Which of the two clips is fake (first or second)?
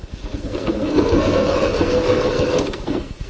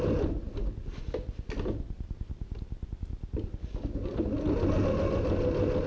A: first